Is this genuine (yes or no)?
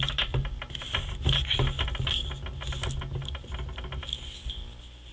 yes